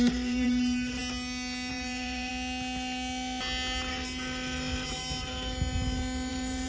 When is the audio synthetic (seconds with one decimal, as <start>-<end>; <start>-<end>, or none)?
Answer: 0.0-1.0; 1.7-2.3; 6.3-6.7